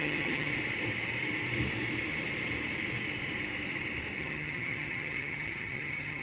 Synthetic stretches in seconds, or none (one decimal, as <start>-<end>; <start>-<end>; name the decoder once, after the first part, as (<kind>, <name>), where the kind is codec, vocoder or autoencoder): 0.0-0.5 (vocoder, HiFi-GAN); 4.2-6.2